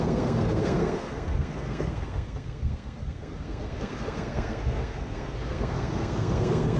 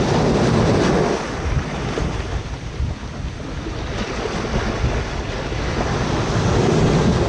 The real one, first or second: second